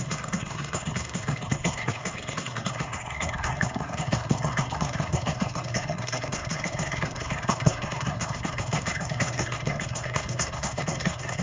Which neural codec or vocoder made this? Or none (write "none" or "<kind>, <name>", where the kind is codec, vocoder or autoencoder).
codec, SNAC